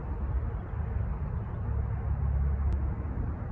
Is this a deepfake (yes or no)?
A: no